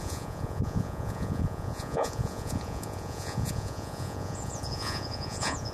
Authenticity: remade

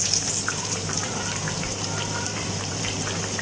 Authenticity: remade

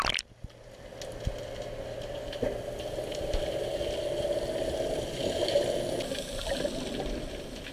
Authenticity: recorded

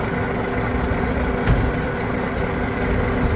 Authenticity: recorded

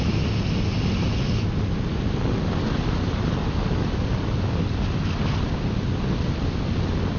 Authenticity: recorded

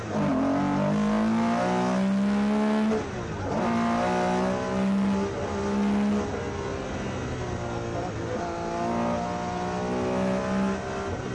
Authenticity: recorded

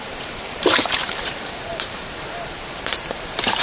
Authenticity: remade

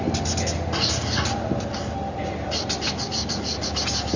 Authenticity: recorded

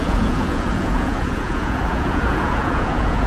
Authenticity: remade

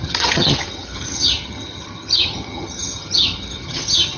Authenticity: remade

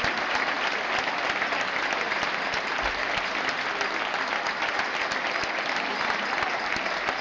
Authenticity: recorded